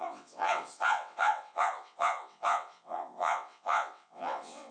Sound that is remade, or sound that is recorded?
remade